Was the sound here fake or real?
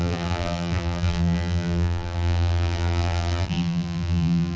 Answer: fake